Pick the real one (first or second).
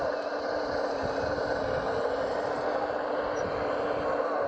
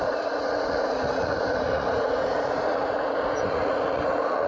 first